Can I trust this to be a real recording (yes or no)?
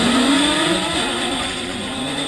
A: no